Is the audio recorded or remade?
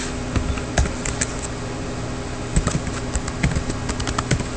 recorded